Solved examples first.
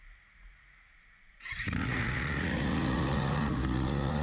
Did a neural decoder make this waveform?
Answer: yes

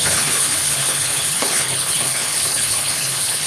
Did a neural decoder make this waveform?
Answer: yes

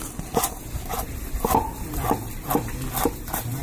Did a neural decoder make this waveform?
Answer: yes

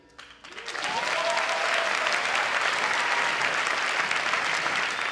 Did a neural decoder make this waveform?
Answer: no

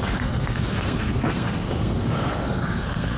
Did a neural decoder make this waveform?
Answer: yes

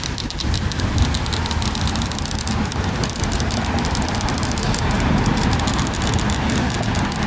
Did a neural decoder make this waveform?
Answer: no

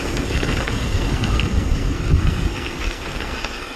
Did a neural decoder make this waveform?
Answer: yes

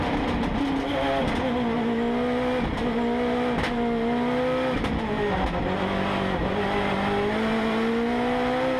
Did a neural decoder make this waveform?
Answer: no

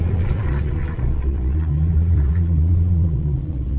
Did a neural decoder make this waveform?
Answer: yes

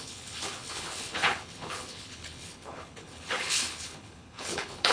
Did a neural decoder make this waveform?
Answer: yes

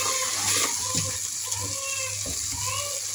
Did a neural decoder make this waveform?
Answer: no